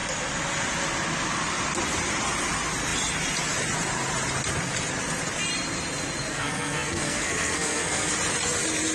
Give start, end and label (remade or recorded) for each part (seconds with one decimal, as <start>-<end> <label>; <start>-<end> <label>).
0.0-6.3 recorded; 6.3-8.1 remade; 8.1-8.9 recorded